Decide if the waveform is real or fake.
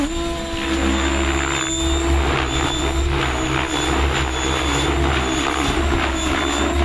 real